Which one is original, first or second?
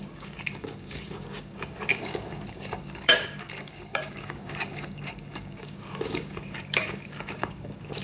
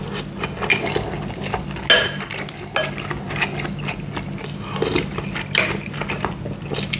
second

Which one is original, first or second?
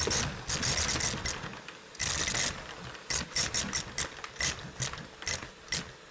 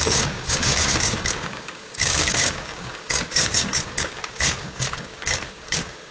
first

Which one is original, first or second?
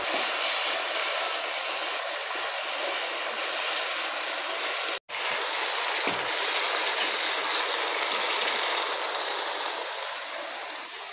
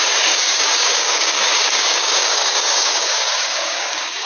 first